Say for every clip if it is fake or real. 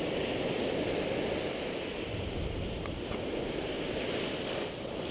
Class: real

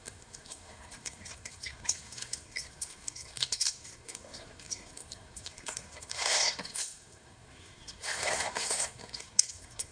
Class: fake